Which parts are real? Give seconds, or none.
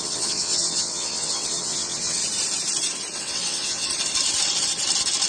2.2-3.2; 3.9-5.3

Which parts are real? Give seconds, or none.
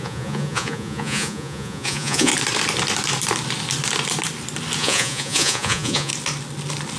2.3-4.8; 6.1-7.0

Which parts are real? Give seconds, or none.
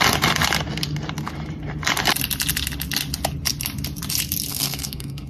0.0-4.5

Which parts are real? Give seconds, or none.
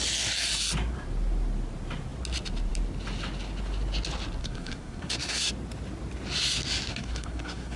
0.0-4.4; 5.5-6.9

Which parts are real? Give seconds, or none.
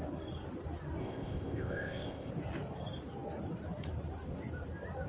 0.0-1.0; 2.3-5.1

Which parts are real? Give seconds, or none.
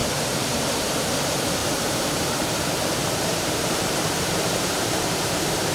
0.6-1.6; 2.6-3.0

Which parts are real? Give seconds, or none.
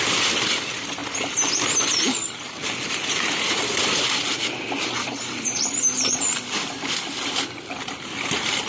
0.0-8.7